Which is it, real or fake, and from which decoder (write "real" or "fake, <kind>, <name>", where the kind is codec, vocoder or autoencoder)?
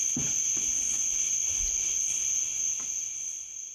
real